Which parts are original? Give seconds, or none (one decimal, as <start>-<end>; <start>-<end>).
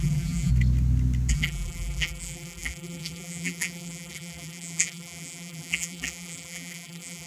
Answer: 0.5-1.3